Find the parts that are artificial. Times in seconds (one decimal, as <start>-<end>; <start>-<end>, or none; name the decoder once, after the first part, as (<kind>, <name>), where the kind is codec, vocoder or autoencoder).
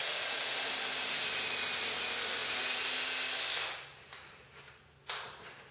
0.0-0.7 (vocoder, Vocos)